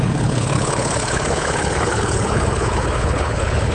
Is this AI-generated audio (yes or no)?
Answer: yes